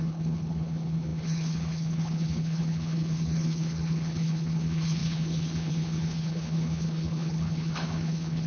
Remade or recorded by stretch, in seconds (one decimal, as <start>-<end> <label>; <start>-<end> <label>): 0.0-8.5 remade